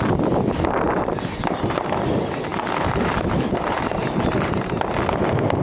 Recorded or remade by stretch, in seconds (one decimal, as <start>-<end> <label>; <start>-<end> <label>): 0.0-2.5 recorded; 2.5-4.6 remade; 4.6-5.6 recorded